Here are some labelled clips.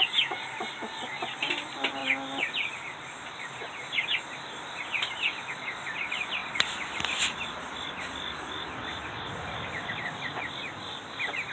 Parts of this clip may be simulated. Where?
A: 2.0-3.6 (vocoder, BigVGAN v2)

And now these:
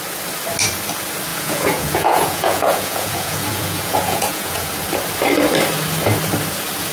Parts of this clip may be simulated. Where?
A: 1.3-4.7 (vocoder, Vocos)

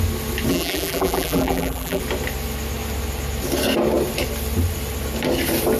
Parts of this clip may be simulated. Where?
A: 0.5-2.0 (vocoder, BigVGAN v2)

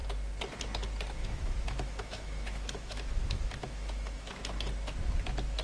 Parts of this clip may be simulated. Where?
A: 1.2-4.4 (autoencoder, DAC-VAE)

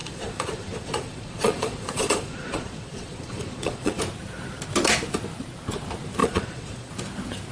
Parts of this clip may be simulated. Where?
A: 0.0-4.0 (vocoder, Vocos); 6.2-6.9

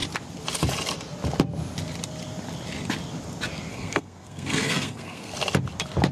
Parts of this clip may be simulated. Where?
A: 3.7-5.3 (codec, SNAC)

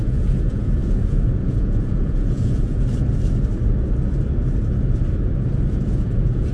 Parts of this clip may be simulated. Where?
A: 0.0-2.8 (vocoder, Vocos); 5.8-6.5